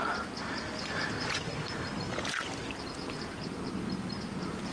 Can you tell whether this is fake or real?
real